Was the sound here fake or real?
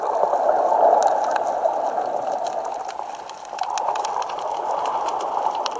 real